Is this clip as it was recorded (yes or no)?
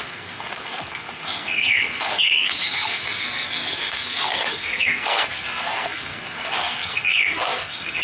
no